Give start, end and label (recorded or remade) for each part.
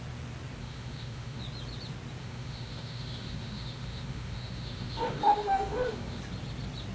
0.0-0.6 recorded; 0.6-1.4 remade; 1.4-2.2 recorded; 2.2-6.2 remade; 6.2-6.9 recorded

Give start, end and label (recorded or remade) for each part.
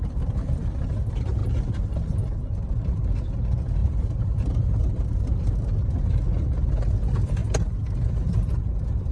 0.0-3.8 recorded; 3.8-5.5 remade; 5.5-9.1 recorded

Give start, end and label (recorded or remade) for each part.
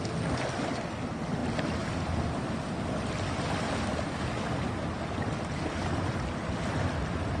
0.0-7.4 recorded